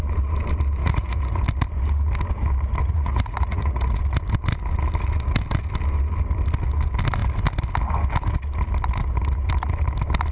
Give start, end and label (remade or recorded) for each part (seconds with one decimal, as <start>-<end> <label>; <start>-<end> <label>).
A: 0.0-0.8 recorded; 0.8-1.4 remade; 1.4-2.8 recorded; 2.8-4.0 remade; 4.0-10.3 recorded